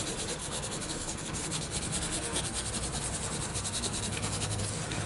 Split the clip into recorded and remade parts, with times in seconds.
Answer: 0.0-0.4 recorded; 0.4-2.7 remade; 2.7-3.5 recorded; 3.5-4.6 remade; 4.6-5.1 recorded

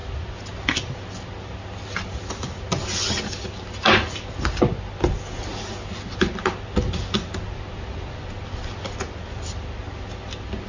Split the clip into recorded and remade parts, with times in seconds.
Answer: 0.0-10.7 recorded